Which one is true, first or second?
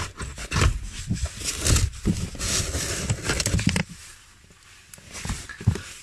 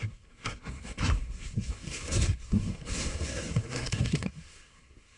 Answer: first